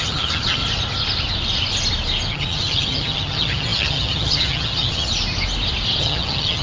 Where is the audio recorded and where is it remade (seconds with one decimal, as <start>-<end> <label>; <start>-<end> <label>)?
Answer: 0.0-0.6 remade; 0.6-2.3 recorded; 2.3-5.1 remade; 5.1-6.0 recorded; 6.0-6.6 remade